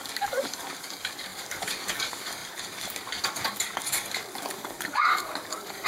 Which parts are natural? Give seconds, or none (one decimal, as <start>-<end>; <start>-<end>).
none